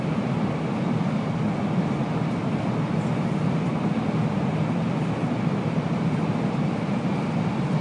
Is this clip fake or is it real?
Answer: real